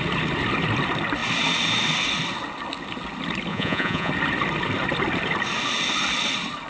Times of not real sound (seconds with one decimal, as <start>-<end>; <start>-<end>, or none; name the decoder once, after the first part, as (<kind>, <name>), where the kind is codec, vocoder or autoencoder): 3.5-4.1 (vocoder, Vocos)